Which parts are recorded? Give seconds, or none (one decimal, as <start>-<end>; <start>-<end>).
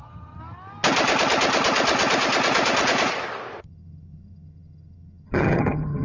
0.4-3.6